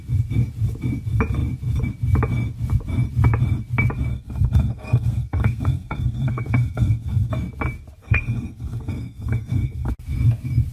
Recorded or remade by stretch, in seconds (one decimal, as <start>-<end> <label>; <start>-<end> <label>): 0.0-4.1 recorded; 4.1-7.3 remade; 7.3-8.0 recorded; 8.0-9.9 remade; 9.9-10.7 recorded